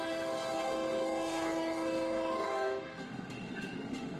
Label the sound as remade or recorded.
remade